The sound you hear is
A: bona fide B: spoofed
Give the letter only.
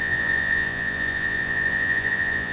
B